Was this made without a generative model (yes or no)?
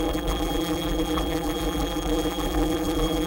no